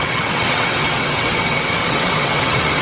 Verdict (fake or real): fake